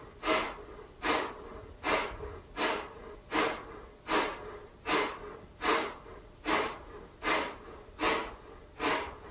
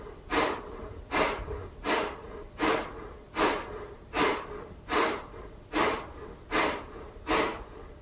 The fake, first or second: second